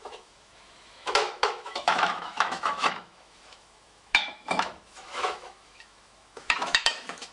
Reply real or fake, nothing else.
fake